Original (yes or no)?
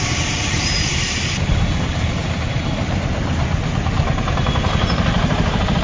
no